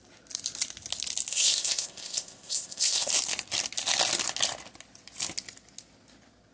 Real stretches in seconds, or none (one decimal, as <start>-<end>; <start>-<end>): 0.0-1.3; 3.1-6.5